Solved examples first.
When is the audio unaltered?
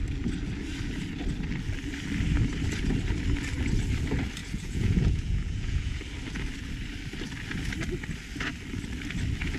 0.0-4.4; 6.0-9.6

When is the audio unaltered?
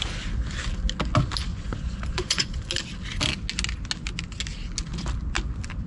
0.0-1.5; 2.6-5.9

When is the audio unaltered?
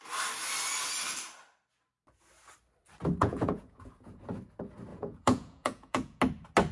0.0-3.2; 4.2-4.9; 6.2-6.7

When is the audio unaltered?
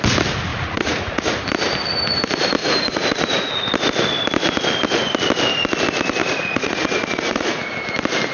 0.0-0.5; 1.4-2.6; 3.5-6.2; 7.6-8.3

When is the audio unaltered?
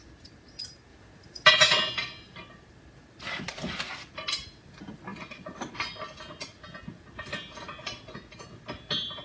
0.0-9.2